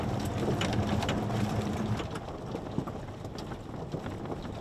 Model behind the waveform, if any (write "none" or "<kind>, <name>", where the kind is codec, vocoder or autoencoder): vocoder, BigVGAN v2